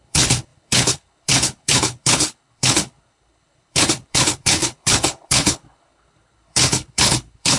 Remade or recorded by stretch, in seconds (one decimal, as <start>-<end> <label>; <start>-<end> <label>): 0.0-7.6 remade